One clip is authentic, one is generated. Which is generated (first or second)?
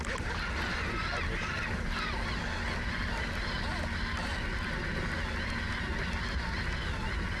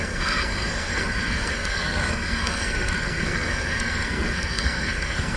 second